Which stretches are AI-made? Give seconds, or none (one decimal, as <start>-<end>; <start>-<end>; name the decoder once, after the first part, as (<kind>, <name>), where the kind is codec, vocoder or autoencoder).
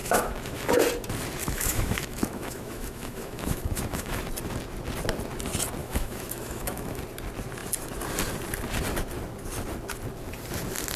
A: 0.0-0.7 (autoencoder, DAC-VAE); 1.4-4.2; 5.8-7.0